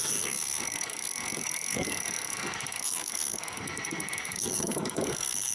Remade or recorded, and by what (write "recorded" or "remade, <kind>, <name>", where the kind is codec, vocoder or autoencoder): remade, codec, SNAC